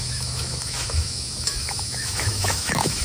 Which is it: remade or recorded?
remade